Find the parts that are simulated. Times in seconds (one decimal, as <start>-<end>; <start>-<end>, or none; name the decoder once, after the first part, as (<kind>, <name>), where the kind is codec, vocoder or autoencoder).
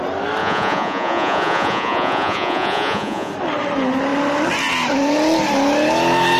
0.4-3.3 (vocoder, Vocos)